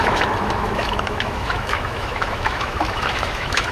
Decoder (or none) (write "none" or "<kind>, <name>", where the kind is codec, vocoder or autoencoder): autoencoder, DAC-VAE